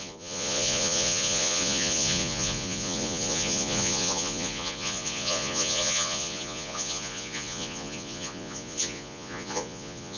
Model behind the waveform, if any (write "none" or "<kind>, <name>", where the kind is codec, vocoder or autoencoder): vocoder, Vocos